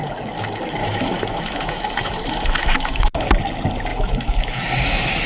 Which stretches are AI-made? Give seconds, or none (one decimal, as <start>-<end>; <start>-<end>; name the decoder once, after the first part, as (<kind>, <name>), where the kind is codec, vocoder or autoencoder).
0.8-3.3 (autoencoder, DAC-VAE); 3.9-5.3